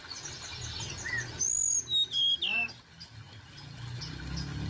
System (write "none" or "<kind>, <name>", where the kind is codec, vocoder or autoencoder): none